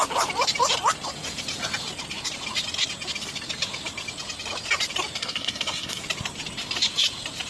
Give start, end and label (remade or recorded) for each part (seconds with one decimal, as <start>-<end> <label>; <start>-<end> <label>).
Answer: 0.0-5.2 recorded; 5.2-6.0 remade; 6.0-7.5 recorded